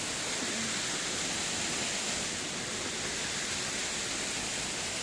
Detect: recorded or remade recorded